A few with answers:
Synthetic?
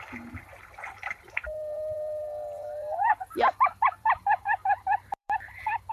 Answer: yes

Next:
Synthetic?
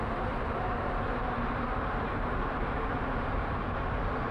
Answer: yes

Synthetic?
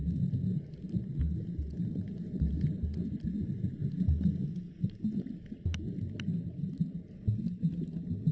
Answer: no